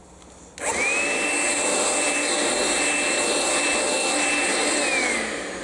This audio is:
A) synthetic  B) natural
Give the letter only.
B